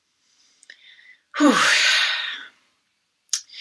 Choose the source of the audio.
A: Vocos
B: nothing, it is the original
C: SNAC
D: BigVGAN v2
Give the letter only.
D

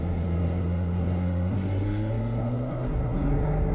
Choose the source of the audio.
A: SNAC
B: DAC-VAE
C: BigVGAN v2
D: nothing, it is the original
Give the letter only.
A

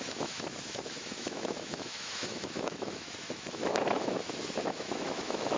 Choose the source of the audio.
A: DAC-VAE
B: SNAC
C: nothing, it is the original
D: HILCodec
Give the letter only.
A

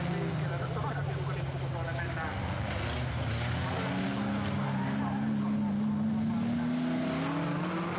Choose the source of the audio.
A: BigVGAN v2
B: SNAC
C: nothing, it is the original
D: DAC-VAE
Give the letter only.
C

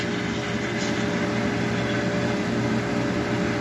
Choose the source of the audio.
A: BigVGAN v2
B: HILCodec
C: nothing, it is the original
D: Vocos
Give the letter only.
C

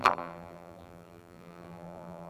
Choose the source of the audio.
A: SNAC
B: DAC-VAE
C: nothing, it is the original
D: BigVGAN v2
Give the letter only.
D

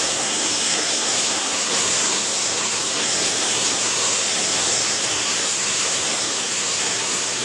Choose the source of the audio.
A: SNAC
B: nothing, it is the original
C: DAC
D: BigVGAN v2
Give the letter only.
A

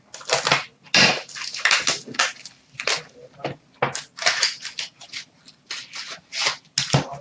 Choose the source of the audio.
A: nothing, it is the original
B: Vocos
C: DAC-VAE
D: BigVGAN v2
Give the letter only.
A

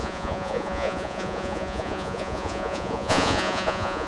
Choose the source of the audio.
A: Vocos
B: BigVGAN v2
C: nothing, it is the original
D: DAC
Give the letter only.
A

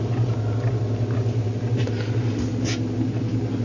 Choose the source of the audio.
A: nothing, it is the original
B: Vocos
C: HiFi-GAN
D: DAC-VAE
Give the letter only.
A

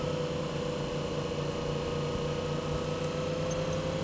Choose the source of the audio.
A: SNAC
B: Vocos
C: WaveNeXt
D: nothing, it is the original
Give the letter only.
D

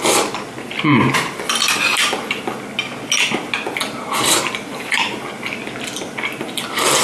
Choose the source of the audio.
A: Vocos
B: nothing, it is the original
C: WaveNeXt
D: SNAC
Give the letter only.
B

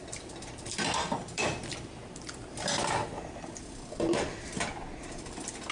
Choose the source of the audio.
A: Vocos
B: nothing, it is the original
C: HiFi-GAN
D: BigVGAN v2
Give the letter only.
D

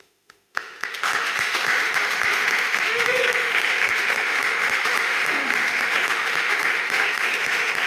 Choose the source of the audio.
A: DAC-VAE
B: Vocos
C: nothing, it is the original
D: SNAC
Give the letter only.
A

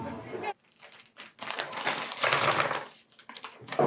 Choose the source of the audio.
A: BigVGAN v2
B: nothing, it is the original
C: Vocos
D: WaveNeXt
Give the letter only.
B